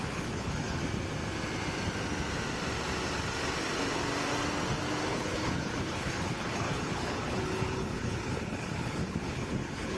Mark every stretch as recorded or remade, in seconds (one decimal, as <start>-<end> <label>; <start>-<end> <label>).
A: 0.0-0.8 remade; 0.8-5.1 recorded; 5.1-10.0 remade